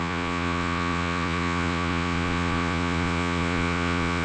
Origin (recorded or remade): remade